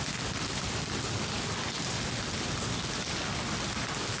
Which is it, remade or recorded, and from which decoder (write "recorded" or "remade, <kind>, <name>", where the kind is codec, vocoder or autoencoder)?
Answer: recorded